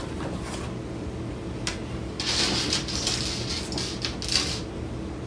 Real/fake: real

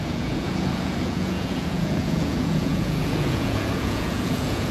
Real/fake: fake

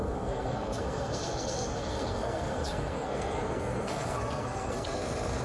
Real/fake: fake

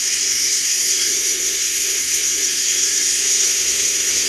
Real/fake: fake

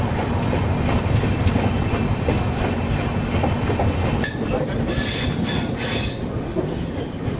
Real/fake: real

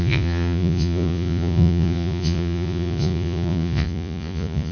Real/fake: fake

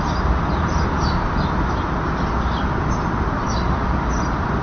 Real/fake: real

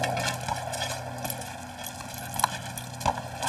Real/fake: real